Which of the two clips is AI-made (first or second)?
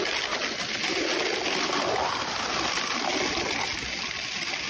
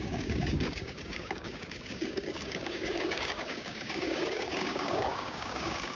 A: second